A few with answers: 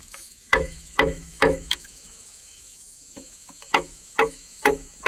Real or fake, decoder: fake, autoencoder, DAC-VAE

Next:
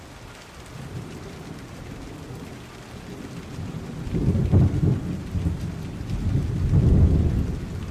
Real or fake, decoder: real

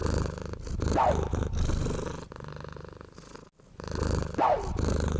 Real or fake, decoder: real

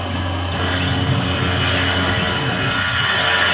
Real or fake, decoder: real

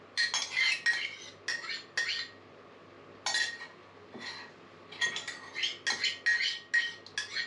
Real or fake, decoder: real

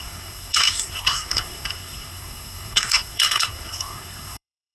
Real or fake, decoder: fake, codec, SNAC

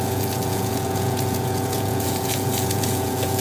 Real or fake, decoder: fake, vocoder, Vocos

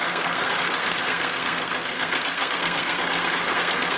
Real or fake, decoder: fake, codec, SNAC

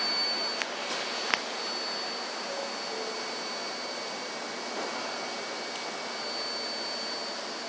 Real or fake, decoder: real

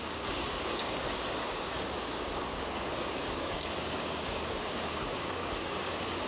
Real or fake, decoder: fake, codec, DAC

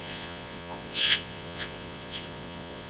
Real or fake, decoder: fake, vocoder, Vocos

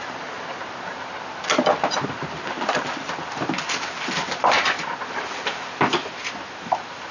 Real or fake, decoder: real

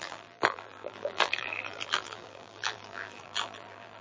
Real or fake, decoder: fake, vocoder, BigVGAN v2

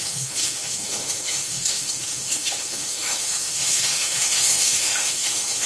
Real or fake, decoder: fake, autoencoder, DAC-VAE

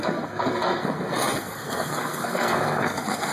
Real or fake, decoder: fake, codec, SNAC